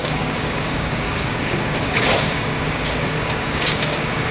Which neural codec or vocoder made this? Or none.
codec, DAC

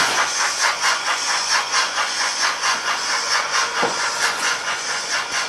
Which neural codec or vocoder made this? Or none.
vocoder, Vocos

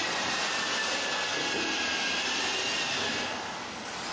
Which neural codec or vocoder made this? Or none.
none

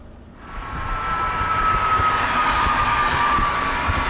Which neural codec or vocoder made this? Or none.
none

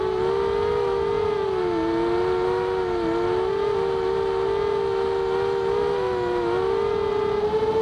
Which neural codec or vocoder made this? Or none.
none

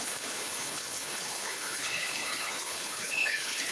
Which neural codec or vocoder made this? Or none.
codec, HILCodec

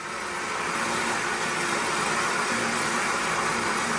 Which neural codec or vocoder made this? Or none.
none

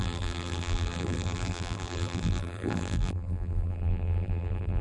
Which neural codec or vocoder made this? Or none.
vocoder, BigVGAN v2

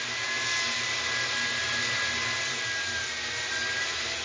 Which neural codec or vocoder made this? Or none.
none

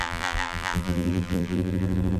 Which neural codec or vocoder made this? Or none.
vocoder, BigVGAN v2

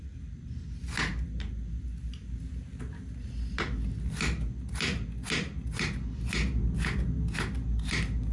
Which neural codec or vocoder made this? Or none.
none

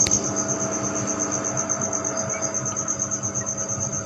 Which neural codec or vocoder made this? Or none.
none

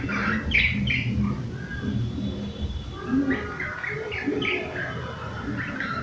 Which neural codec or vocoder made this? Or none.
none